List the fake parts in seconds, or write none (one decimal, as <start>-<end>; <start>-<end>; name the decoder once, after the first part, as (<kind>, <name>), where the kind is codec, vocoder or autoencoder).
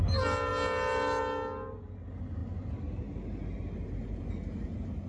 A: none